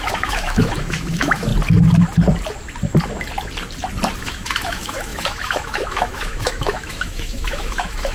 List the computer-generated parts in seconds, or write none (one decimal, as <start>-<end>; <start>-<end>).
0.0-1.5; 4.2-8.1